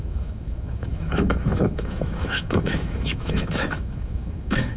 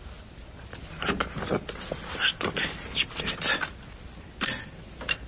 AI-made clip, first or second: first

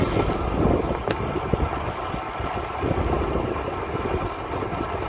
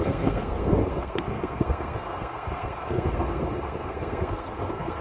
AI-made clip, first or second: second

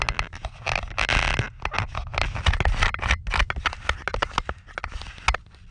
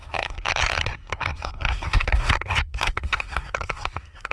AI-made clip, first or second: second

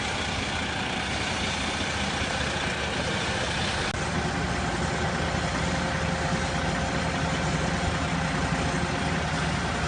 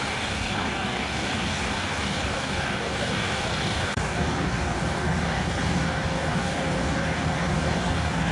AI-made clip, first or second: second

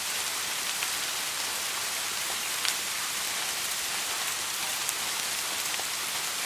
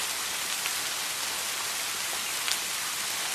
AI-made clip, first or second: first